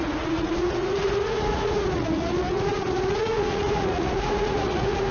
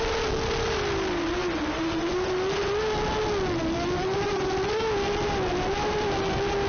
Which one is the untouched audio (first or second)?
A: second